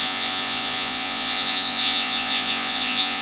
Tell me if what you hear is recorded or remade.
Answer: remade